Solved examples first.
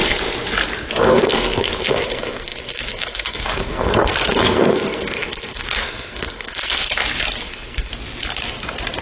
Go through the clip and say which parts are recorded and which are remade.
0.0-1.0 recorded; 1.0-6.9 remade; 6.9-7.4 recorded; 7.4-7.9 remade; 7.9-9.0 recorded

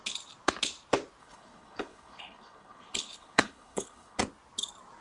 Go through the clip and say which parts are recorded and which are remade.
0.0-1.2 recorded; 1.2-4.2 remade; 4.2-5.0 recorded

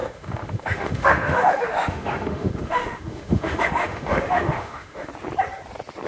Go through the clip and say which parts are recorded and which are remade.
0.0-5.1 remade; 5.1-6.1 recorded

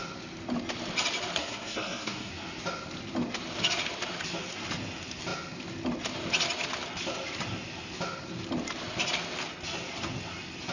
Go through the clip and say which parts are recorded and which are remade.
0.0-1.4 recorded; 1.4-2.3 remade; 2.3-10.7 recorded